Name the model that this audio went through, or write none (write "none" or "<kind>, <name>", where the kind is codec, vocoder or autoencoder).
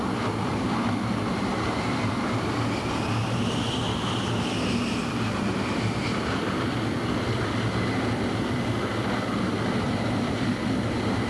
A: none